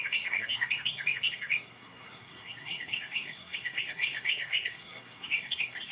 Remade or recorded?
remade